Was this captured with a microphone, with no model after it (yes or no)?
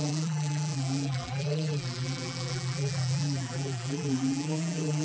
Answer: no